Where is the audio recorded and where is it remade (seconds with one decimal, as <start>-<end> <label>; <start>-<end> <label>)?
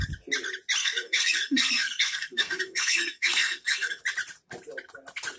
0.0-0.8 recorded; 0.8-4.0 remade; 4.0-5.4 recorded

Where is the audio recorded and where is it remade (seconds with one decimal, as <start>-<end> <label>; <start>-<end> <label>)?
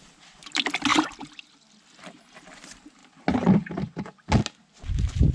0.0-5.3 recorded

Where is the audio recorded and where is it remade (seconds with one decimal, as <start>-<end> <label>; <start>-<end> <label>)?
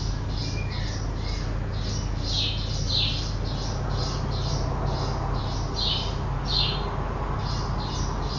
0.0-8.4 recorded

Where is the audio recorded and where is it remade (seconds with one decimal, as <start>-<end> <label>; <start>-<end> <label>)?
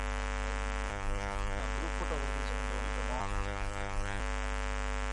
0.0-0.9 recorded; 0.9-1.6 remade; 1.6-3.2 recorded; 3.2-4.2 remade; 4.2-5.1 recorded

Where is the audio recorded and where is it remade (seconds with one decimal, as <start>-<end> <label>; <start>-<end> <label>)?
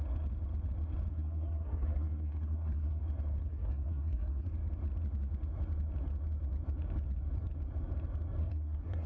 0.0-1.1 recorded; 1.1-3.0 remade; 3.0-3.4 recorded; 3.4-4.5 remade; 4.5-8.4 recorded; 8.4-9.1 remade